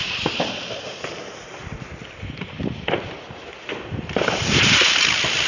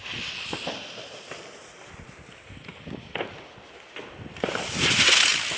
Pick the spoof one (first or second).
first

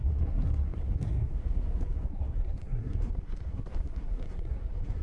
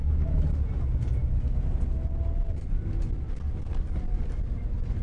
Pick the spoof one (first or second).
first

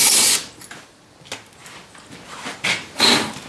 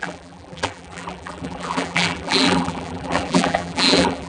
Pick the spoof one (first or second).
second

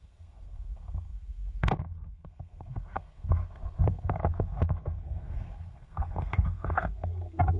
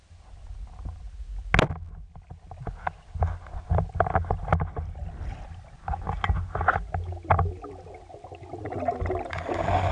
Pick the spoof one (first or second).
first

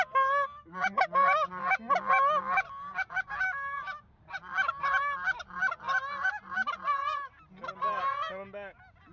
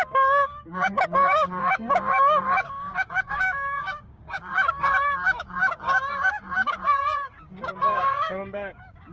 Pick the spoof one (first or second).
second